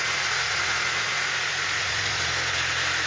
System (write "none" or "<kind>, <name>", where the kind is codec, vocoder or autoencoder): vocoder, Vocos